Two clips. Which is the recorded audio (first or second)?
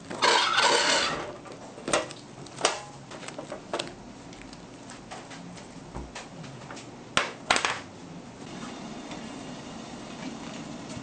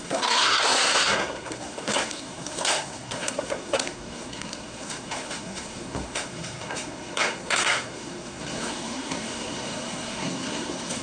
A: first